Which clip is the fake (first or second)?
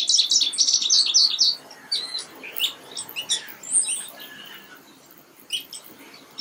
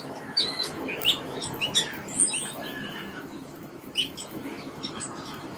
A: second